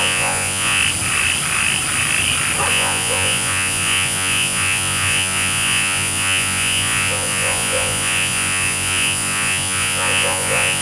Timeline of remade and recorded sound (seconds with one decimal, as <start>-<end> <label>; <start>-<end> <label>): 0.0-0.8 remade; 0.8-2.7 recorded; 2.7-10.8 remade